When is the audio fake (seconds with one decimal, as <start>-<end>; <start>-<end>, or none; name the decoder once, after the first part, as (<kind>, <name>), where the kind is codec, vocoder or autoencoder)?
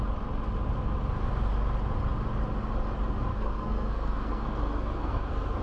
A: 3.3-5.6 (codec, SNAC)